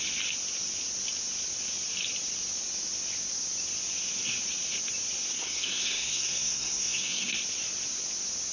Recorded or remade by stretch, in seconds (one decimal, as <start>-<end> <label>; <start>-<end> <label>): 0.0-5.3 recorded; 5.3-7.3 remade; 7.3-8.5 recorded